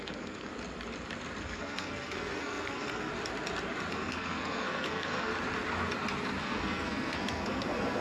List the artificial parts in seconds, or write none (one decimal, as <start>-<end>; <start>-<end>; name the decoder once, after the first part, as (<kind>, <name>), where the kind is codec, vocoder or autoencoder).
0.0-0.5 (codec, SNAC); 1.4-3.1; 3.9-5.3; 6.4-8.0